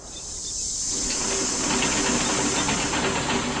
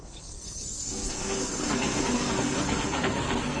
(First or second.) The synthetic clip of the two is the second